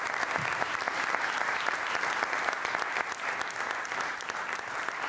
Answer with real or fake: real